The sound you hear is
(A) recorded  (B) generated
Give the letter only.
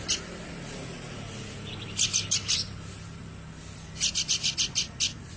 A